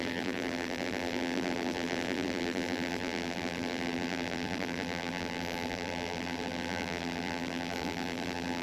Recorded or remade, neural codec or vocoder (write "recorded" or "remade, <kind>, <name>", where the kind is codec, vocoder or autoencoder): remade, vocoder, BigVGAN v2